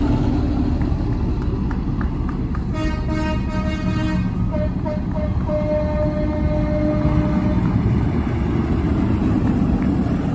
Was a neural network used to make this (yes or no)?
no